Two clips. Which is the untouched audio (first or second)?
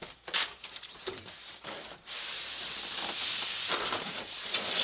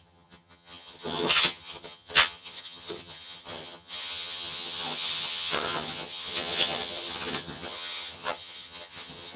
first